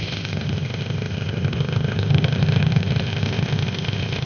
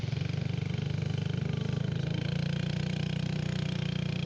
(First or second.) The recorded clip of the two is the second